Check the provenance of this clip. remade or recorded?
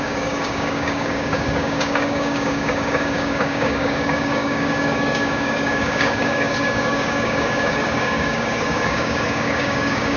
remade